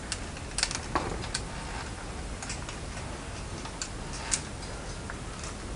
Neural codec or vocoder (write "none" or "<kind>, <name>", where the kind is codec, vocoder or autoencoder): none